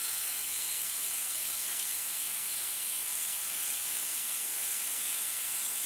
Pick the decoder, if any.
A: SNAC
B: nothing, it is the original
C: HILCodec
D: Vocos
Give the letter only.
A